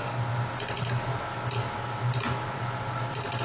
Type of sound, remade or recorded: recorded